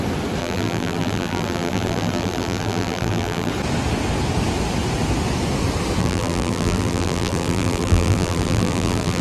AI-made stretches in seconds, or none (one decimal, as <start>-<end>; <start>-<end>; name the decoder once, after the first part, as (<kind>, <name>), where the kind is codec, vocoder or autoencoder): 0.4-3.5 (vocoder, BigVGAN v2); 6.0-9.2